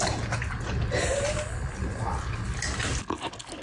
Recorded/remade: recorded